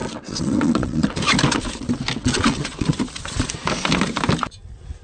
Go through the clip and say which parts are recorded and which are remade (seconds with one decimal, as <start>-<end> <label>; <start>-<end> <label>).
0.0-1.2 remade; 1.2-2.2 recorded; 2.2-3.0 remade; 3.0-5.0 recorded